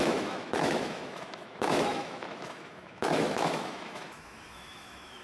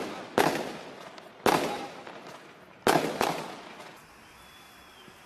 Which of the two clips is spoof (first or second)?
first